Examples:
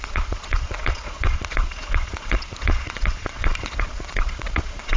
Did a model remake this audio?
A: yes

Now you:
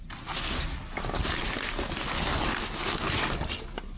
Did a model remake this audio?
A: no